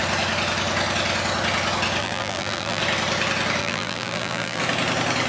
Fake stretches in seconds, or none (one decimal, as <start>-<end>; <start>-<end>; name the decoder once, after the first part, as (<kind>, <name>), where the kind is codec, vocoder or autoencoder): 2.0-2.8 (vocoder, BigVGAN v2); 3.6-4.6